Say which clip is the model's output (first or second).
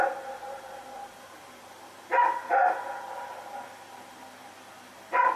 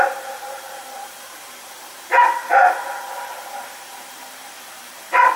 second